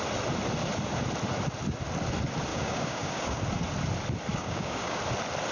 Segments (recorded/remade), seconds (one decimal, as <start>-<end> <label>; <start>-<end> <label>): 0.0-2.5 recorded; 2.5-3.4 remade; 3.4-4.3 recorded; 4.3-5.0 remade; 5.0-5.5 recorded